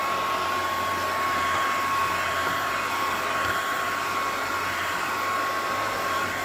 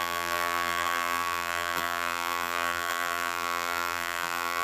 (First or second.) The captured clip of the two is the first